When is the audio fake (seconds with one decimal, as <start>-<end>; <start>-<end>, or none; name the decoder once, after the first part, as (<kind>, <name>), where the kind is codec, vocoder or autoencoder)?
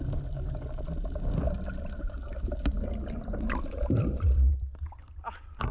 none